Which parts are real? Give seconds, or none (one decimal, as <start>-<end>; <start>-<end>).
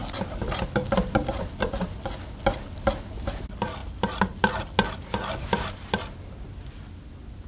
0.0-7.5